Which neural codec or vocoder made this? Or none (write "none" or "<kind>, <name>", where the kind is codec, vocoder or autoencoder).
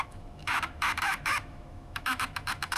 autoencoder, DAC-VAE